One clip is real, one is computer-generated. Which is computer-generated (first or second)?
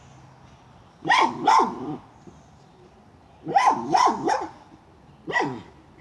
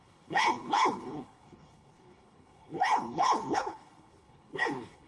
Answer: second